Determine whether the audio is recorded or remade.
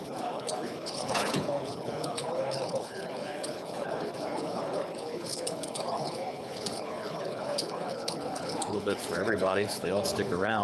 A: remade